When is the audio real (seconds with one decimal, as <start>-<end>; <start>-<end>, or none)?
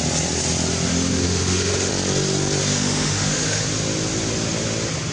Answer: 0.0-0.9; 1.9-2.7; 3.6-5.1